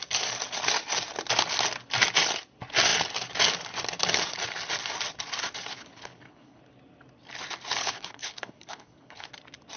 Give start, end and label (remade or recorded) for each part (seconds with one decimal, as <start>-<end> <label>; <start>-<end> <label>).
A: 0.0-5.7 recorded; 5.7-6.6 remade; 6.6-7.8 recorded; 7.8-9.3 remade; 9.3-9.8 recorded